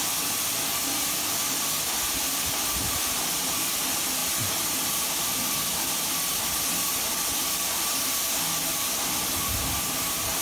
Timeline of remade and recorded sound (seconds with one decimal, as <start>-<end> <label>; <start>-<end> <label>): 0.0-10.4 recorded